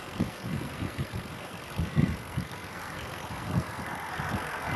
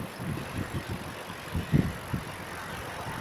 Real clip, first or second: second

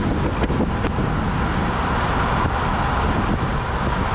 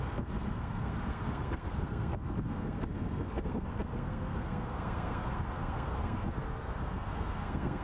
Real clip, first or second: first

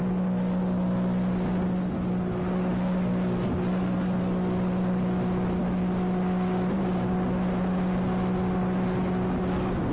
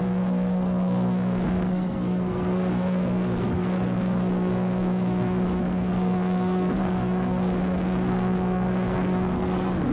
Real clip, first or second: first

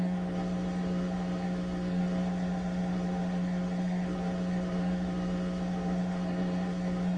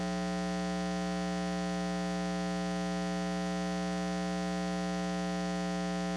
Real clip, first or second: second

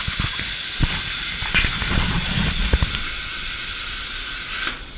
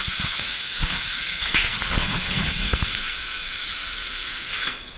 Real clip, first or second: first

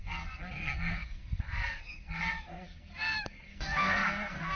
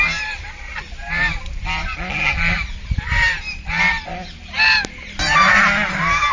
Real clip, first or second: second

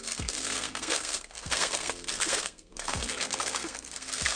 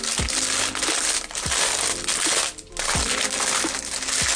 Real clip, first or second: second